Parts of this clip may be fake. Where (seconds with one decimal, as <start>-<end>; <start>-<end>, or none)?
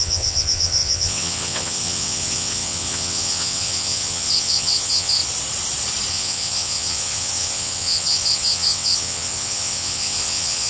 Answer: 0.0-5.2; 6.1-10.7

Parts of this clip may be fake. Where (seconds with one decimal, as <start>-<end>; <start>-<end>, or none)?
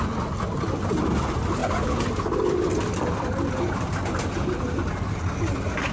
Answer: none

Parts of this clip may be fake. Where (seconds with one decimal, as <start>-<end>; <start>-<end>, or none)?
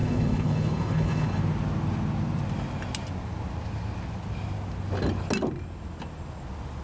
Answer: 0.0-1.4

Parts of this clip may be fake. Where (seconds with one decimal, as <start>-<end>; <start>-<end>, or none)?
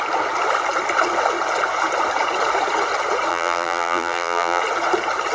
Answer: 3.3-4.6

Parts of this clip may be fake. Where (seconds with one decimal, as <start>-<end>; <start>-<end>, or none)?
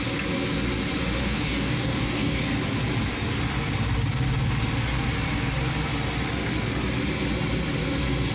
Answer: 1.2-2.4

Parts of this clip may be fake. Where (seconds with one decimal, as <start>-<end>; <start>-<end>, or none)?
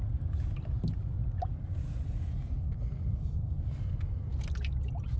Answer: none